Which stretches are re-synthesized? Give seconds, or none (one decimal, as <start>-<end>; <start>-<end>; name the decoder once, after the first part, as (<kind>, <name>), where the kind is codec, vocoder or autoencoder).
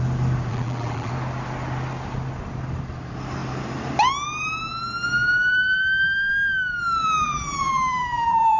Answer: 0.5-1.1 (vocoder, BigVGAN v2); 7.0-8.6